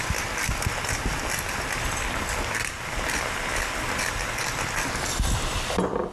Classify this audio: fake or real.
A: real